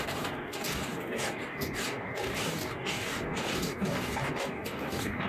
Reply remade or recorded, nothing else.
remade